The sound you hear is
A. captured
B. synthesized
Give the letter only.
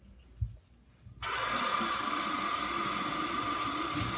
A